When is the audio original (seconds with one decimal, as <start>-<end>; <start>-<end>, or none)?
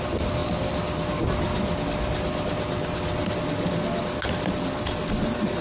0.0-0.4; 1.1-5.6